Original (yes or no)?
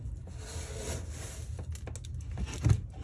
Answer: yes